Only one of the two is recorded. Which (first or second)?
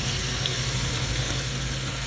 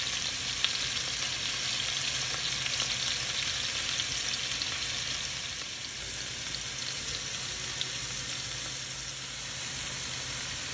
second